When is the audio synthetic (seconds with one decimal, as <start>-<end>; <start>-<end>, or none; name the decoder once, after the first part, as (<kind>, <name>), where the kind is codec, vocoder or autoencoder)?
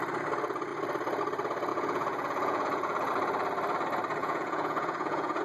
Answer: 1.7-3.1 (vocoder, Vocos); 4.2-5.4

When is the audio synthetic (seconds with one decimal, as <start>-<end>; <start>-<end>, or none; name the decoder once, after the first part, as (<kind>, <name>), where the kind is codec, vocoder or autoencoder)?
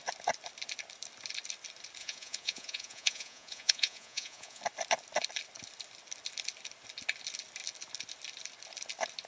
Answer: 2.0-4.6 (vocoder, Vocos)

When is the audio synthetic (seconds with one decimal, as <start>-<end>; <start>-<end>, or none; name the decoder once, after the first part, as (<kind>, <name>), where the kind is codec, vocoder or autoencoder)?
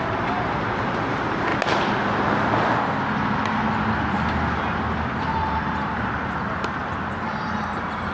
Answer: 0.0-1.5 (vocoder, BigVGAN v2); 5.2-6.8; 7.4-8.1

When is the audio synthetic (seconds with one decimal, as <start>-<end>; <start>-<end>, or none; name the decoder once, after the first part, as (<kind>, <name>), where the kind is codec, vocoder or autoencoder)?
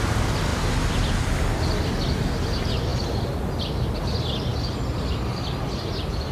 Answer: none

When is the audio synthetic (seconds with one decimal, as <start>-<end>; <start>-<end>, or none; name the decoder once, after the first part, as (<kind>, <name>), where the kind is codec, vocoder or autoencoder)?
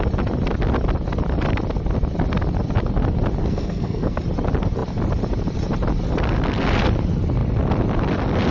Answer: 3.4-4.2 (codec, SNAC)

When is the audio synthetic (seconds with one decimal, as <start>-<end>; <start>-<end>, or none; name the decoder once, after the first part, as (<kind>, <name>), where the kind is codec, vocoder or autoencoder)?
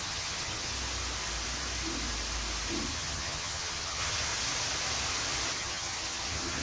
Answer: 0.0-0.7 (vocoder, HiFi-GAN); 2.9-4.3; 5.6-6.6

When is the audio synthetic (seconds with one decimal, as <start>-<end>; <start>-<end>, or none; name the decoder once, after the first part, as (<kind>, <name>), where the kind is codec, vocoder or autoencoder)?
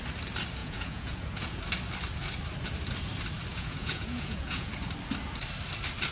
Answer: 0.6-1.6 (vocoder, Vocos); 3.5-4.7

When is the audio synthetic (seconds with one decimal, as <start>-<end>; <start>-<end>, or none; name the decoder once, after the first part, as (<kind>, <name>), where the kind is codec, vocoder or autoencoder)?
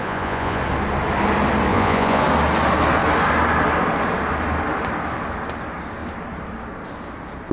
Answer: 0.0-0.6 (vocoder, Vocos); 1.7-2.2